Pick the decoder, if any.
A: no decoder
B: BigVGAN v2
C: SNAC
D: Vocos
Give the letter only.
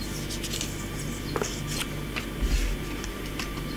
A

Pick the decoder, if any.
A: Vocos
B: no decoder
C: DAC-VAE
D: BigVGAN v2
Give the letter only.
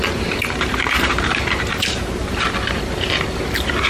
D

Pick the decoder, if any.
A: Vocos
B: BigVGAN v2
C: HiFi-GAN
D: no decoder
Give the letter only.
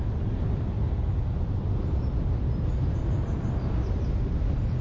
B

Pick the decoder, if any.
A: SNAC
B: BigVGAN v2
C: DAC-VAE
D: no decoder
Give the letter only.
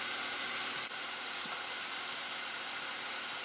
B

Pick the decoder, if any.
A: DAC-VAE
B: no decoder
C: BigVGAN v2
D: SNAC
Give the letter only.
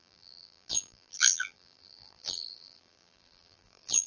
C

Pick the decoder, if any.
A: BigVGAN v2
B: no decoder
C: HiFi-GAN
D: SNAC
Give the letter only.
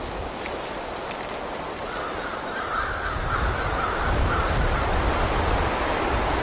B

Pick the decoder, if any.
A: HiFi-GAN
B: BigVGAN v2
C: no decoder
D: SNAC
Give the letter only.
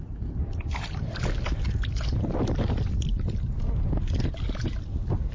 C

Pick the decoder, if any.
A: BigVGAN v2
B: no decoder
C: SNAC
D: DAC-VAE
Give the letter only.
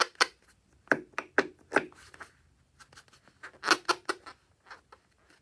B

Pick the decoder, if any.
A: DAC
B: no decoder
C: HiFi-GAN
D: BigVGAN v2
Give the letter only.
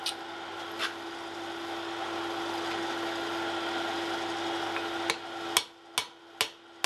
B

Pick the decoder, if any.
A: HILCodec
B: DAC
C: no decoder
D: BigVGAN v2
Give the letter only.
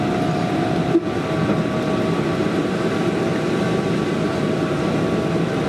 C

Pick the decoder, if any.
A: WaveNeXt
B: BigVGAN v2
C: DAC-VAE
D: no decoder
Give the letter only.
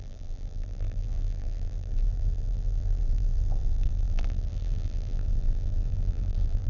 B